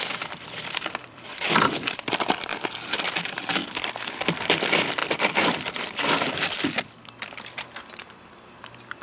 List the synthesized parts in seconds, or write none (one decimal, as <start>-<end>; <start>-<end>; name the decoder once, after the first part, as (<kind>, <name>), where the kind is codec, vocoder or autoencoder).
0.0-2.5 (vocoder, BigVGAN v2); 3.0-3.6; 4.6-9.0